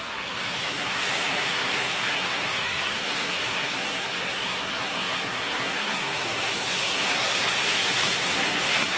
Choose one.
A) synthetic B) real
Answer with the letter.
A